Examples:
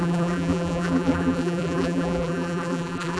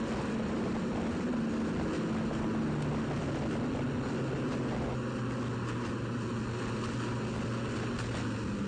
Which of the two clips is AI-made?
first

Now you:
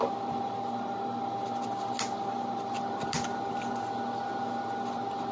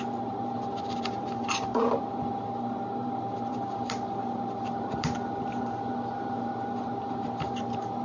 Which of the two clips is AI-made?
second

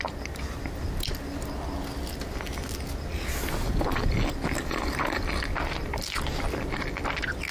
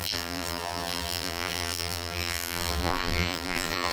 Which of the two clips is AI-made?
second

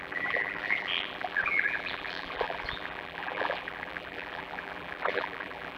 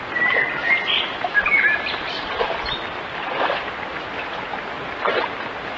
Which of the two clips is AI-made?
first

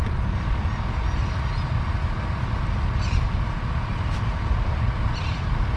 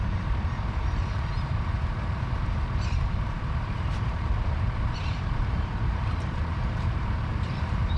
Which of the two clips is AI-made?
second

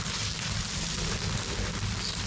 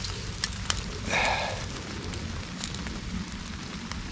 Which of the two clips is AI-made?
second